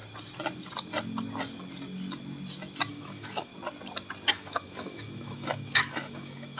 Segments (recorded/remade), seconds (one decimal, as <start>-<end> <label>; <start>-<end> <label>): 0.0-2.9 recorded; 2.9-3.5 remade; 3.5-4.3 recorded; 4.3-6.6 remade